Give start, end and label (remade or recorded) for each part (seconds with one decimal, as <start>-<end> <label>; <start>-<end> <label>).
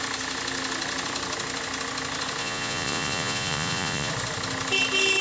0.0-2.4 recorded; 2.4-4.1 remade; 4.1-5.2 recorded